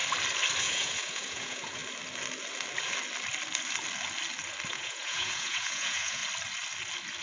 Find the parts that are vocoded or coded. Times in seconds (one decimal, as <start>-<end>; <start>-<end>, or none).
0.6-1.8; 4.7-6.2